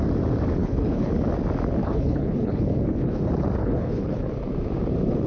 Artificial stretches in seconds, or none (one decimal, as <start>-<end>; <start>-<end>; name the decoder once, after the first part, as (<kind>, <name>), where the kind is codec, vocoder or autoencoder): 0.6-1.1 (codec, HILCodec); 1.8-3.2; 3.6-4.3